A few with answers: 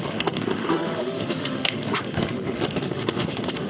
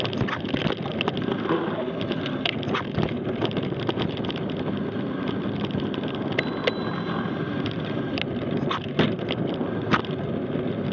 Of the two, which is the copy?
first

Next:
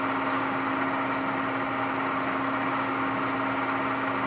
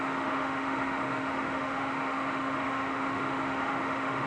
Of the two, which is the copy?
second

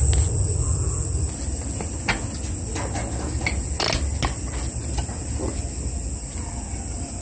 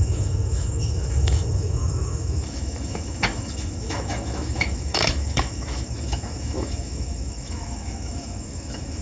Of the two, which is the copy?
second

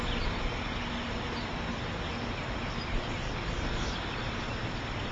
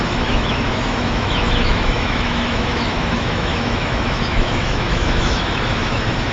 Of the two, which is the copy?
second